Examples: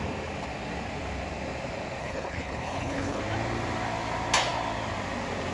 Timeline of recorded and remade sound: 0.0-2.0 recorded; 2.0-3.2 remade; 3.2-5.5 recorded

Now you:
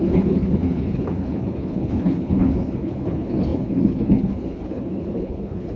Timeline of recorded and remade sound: 0.0-5.8 remade